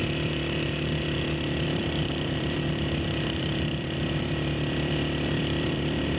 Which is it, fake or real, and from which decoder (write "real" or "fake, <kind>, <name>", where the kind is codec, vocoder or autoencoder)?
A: fake, vocoder, BigVGAN v2